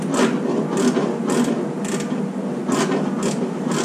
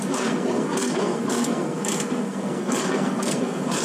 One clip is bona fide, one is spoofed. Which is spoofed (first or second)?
second